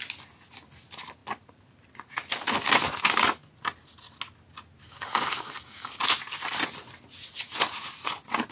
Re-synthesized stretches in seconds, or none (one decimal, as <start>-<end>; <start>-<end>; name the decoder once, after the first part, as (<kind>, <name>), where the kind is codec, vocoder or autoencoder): 4.8-6.0 (codec, DAC)